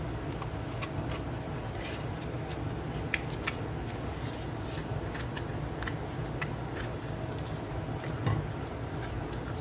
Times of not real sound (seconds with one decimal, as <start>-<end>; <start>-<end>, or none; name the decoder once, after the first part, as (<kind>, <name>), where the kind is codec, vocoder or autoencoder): none

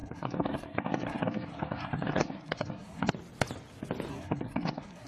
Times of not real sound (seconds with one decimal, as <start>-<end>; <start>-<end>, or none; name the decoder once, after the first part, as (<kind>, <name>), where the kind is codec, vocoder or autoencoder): 0.0-3.1 (codec, SNAC); 4.1-5.1